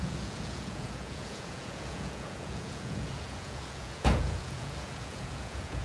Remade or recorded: remade